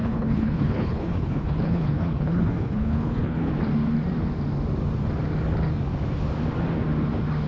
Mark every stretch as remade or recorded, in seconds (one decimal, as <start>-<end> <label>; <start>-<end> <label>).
0.0-3.5 remade; 3.5-7.5 recorded